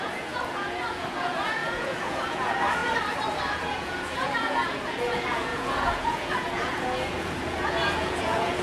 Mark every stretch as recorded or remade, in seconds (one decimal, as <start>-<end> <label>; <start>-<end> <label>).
0.0-2.8 remade; 2.8-3.5 recorded; 3.5-8.6 remade